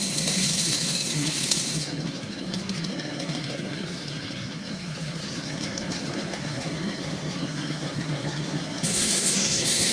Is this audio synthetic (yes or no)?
yes